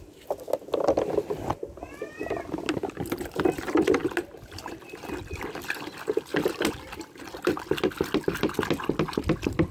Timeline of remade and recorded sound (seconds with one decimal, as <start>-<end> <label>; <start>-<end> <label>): 0.0-9.7 recorded